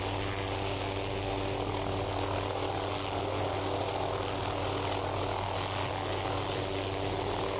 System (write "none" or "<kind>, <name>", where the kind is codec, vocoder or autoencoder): none